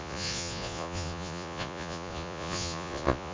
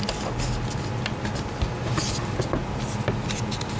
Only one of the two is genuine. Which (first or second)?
second